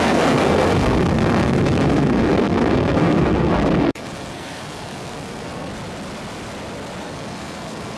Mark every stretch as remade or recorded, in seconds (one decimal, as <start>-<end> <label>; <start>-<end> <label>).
0.0-5.7 remade; 5.7-7.0 recorded; 7.0-8.0 remade